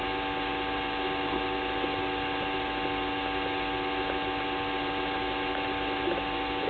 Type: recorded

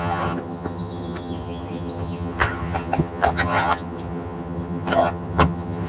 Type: remade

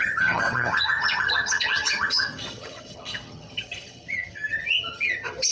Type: remade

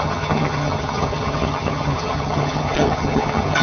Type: remade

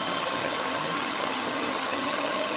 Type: remade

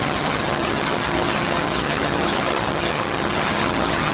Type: remade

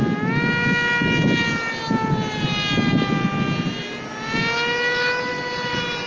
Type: recorded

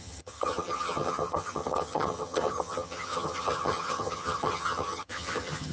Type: remade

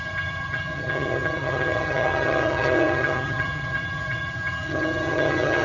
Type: remade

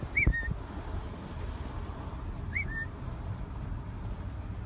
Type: recorded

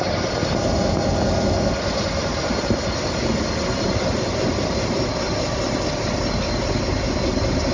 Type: recorded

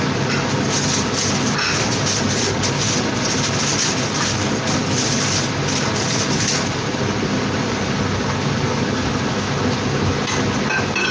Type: recorded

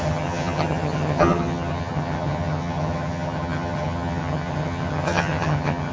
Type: remade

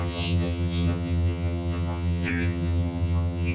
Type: remade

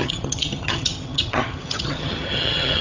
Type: remade